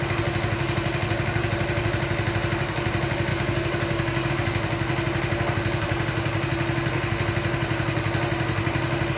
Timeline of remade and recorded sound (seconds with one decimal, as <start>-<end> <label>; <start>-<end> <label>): 0.0-3.3 recorded; 3.3-4.3 remade; 4.3-9.2 recorded